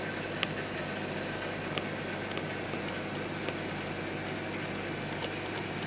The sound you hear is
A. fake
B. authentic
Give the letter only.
B